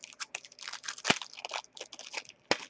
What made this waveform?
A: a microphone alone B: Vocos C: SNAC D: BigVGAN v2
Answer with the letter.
A